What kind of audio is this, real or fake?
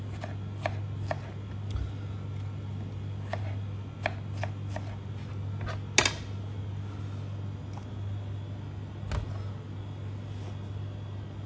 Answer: real